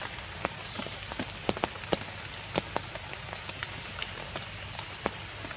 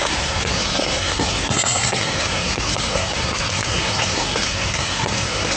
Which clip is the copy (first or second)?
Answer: second